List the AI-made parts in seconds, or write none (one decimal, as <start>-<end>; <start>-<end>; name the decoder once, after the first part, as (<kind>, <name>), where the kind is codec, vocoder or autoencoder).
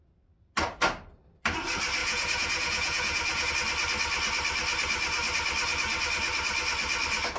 2.0-3.5 (vocoder, Vocos)